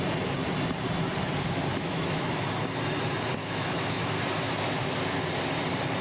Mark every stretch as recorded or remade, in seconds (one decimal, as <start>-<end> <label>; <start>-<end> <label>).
0.0-1.7 recorded; 1.7-2.6 remade; 2.6-3.4 recorded; 3.4-4.2 remade; 4.2-6.0 recorded